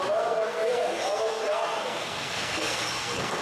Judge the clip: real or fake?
fake